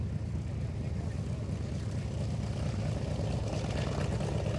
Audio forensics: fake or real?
real